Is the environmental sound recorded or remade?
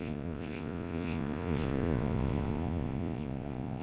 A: remade